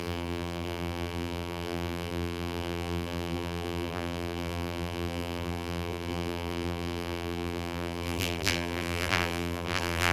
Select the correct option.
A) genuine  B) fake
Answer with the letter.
B